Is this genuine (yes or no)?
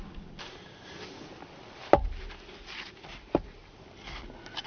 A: yes